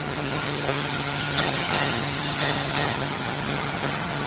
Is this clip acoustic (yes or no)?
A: no